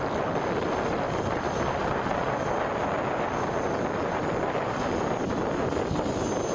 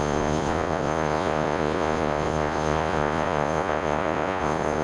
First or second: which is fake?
second